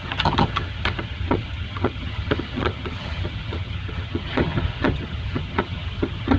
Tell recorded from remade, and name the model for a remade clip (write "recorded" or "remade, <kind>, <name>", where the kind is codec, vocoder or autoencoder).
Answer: remade, vocoder, HiFi-GAN